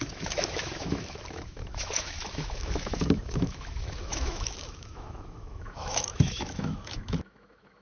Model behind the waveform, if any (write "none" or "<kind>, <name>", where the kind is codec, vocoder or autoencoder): autoencoder, DAC-VAE